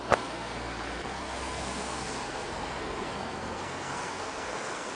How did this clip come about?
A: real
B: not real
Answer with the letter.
B